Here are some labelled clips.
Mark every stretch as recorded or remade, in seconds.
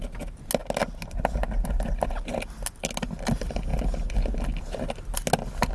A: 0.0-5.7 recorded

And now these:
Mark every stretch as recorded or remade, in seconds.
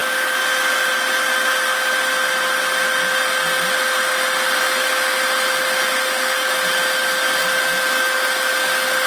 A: 0.0-9.1 recorded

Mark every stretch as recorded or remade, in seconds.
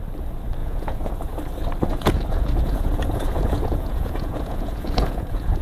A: 0.0-0.6 recorded; 0.6-1.1 remade; 1.1-1.9 recorded; 1.9-5.6 remade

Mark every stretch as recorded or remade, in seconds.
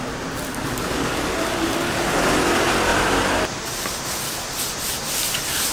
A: 0.0-0.5 recorded; 0.5-2.1 remade; 2.1-5.7 recorded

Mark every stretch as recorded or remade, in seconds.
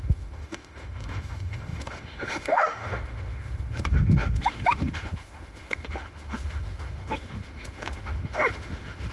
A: 0.0-9.1 remade